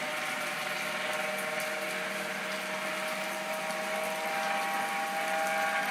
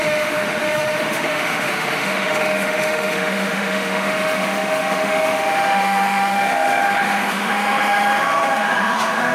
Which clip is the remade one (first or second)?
second